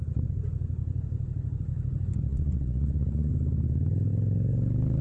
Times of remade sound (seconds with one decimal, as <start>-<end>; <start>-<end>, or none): 2.3-3.3